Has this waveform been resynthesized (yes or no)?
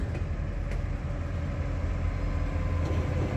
no